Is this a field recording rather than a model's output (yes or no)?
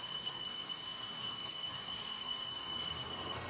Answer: no